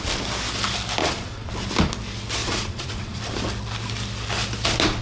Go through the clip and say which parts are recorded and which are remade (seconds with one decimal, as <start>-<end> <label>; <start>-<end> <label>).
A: 0.0-1.0 recorded; 1.0-1.5 remade; 1.5-2.4 recorded; 2.4-3.2 remade; 3.2-5.0 recorded

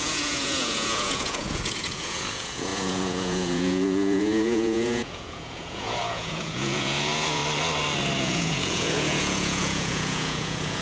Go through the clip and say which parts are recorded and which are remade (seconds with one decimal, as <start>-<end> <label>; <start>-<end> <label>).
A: 0.0-7.4 remade; 7.4-8.2 recorded; 8.2-10.8 remade

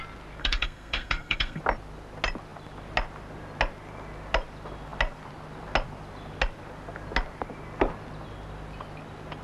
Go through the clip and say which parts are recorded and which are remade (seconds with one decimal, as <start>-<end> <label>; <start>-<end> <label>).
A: 0.0-0.4 recorded; 0.4-1.6 remade; 1.6-9.4 recorded

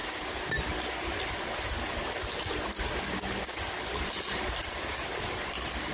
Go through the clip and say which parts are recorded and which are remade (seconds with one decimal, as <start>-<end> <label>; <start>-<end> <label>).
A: 0.0-5.9 recorded